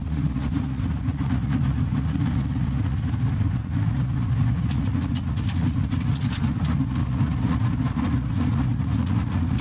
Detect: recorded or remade remade